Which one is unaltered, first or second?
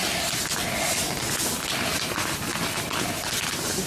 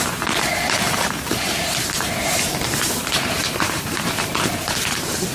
first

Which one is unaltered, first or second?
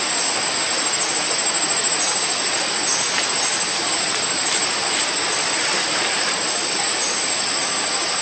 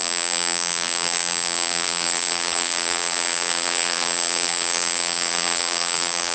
first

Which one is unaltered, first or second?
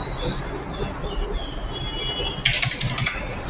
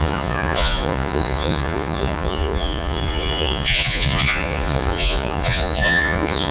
first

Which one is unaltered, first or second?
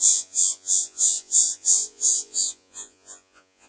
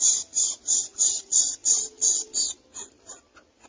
second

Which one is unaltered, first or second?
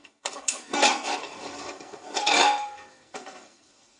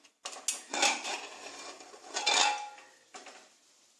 second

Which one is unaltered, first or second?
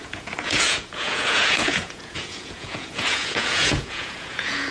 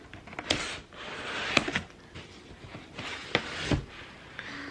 second